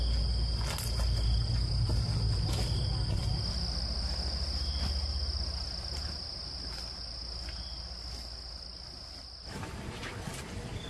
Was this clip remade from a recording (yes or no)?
no